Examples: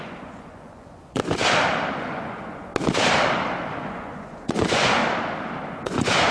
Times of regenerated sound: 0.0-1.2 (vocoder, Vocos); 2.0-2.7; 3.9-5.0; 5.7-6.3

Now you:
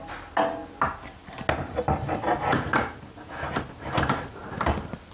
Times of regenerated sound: none

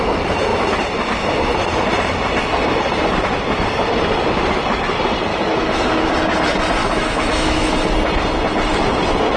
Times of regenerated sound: 5.3-6.1 (autoencoder, DAC-VAE); 6.8-7.7